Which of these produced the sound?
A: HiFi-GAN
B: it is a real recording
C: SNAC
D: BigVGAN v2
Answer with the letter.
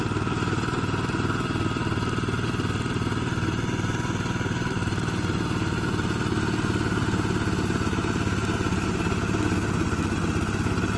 B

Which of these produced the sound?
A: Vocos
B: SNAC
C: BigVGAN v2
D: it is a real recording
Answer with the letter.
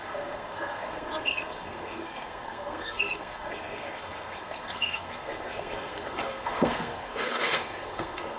B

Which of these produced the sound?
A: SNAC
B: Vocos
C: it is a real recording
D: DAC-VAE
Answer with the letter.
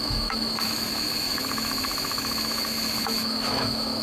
D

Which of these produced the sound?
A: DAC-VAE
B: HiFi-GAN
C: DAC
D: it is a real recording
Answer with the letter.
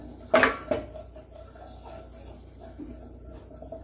D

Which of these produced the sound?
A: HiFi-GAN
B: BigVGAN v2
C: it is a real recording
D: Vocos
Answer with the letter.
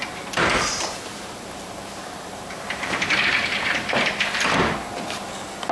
B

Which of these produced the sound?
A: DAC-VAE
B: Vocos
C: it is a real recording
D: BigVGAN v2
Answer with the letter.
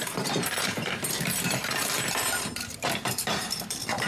D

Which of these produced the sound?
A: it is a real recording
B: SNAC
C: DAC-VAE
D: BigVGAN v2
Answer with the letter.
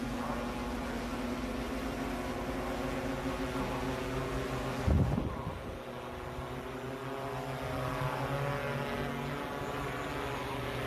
A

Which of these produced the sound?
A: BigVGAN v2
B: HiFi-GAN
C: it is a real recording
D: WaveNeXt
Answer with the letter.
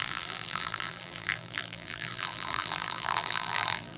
A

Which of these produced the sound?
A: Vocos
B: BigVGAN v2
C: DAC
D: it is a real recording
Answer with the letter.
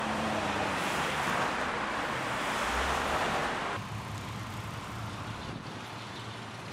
B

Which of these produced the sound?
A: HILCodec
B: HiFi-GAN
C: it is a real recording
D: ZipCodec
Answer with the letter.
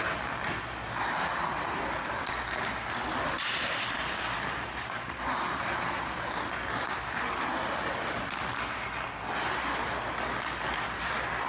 C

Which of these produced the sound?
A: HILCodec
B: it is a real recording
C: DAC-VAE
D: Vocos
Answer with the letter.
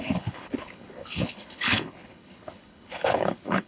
A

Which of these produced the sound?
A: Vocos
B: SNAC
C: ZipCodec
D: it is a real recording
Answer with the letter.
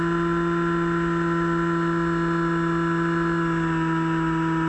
D